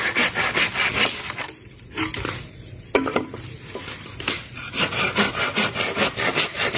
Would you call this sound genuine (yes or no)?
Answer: yes